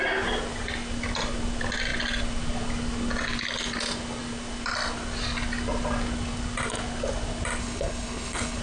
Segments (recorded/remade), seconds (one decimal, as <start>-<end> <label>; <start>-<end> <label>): 0.0-7.6 recorded; 7.6-8.6 remade